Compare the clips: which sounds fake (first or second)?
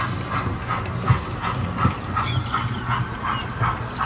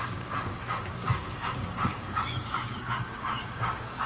second